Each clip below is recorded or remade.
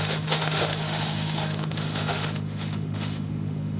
remade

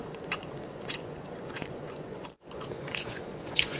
remade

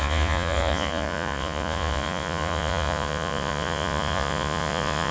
remade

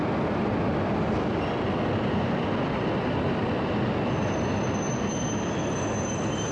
recorded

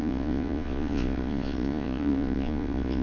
remade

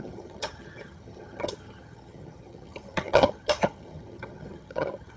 remade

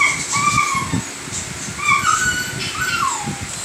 recorded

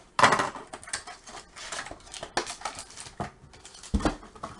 recorded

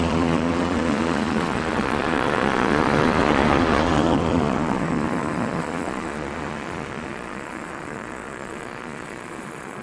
remade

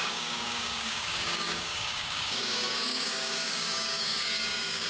remade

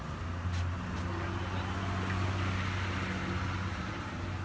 recorded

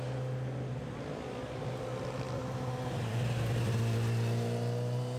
recorded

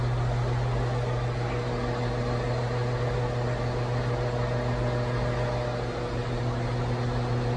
recorded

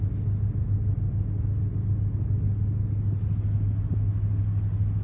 recorded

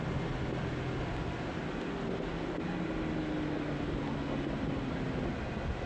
recorded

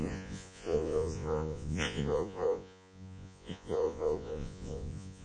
remade